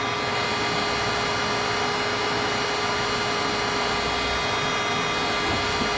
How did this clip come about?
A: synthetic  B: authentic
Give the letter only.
B